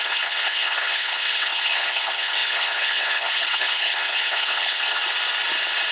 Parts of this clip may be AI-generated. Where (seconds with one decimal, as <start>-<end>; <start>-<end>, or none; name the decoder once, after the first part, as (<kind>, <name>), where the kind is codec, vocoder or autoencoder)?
0.0-5.0 (codec, HILCodec)

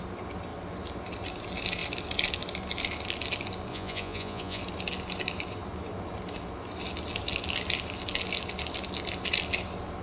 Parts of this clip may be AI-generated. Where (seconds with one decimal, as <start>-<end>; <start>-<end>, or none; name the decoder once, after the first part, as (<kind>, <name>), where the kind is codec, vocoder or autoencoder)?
3.7-4.6 (vocoder, Vocos)

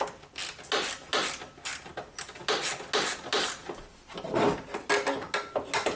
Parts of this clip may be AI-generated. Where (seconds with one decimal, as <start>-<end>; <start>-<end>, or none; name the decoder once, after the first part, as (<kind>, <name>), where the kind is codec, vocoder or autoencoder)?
none

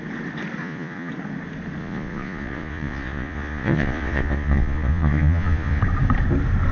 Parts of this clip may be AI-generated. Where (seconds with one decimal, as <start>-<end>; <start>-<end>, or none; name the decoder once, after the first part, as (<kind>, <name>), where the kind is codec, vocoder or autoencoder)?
0.6-1.1 (vocoder, Vocos); 1.8-5.8

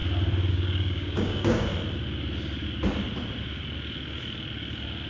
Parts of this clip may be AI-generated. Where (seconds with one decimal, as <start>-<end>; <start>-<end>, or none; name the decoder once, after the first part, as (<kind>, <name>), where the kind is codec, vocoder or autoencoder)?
0.5-1.7 (codec, DAC)

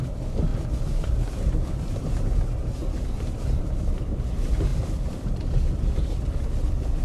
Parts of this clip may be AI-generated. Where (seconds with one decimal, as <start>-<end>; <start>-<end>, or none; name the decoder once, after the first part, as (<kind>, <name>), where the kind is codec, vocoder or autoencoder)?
2.8-3.6 (vocoder, BigVGAN v2); 4.7-6.3